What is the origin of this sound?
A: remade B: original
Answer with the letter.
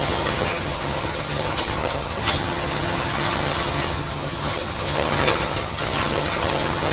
A